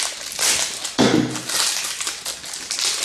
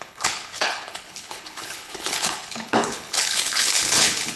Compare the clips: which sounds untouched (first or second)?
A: first